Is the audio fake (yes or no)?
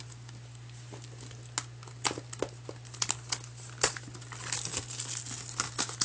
no